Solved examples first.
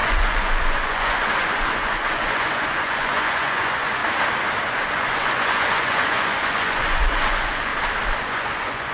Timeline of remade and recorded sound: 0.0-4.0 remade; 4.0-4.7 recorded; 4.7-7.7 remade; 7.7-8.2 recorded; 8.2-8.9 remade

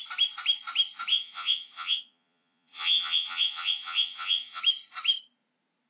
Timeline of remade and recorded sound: 0.0-1.1 recorded; 1.1-4.6 remade; 4.6-5.9 recorded

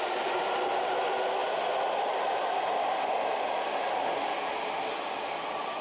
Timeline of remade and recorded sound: 0.0-5.8 recorded